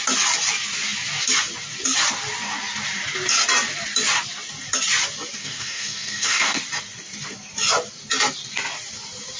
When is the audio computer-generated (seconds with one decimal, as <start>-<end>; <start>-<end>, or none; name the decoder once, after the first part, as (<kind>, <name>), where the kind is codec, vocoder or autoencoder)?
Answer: 5.4-6.6 (codec, DAC)